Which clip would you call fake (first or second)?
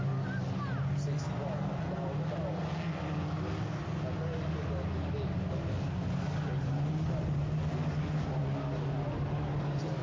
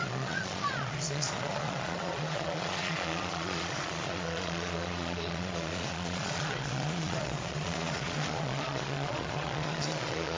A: second